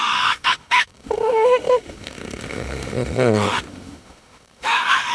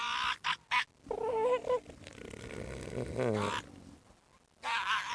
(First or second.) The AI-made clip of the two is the first